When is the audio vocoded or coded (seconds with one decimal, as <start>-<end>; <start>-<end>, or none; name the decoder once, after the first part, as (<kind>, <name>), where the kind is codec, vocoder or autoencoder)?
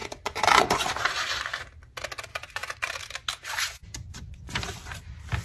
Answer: 0.0-0.9 (vocoder, Vocos); 2.3-2.9; 3.8-5.0